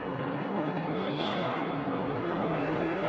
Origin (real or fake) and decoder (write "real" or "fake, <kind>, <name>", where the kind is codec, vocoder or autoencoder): fake, codec, SNAC